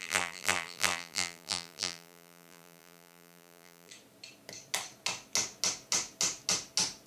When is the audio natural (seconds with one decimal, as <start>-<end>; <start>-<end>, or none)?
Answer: 3.9-7.1